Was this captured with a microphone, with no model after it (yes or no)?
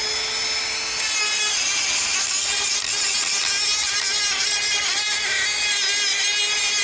yes